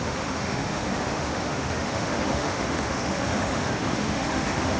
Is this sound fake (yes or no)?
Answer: yes